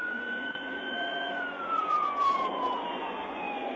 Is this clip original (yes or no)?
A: no